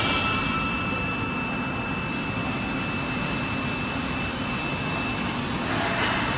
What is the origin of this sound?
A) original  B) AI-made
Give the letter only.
A